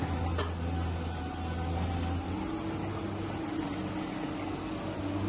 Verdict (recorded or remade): recorded